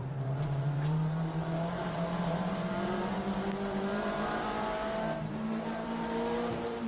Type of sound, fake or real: fake